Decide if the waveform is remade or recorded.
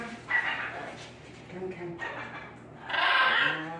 recorded